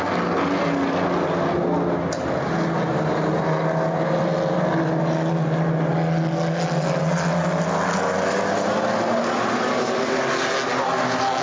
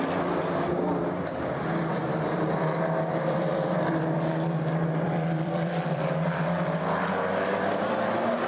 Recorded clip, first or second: first